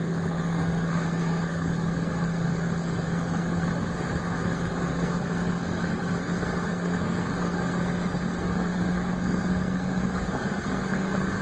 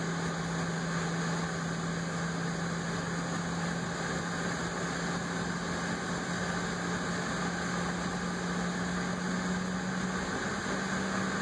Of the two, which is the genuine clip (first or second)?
second